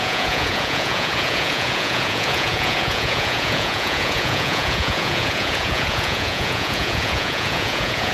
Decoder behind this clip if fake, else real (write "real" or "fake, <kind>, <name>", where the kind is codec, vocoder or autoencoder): fake, vocoder, Vocos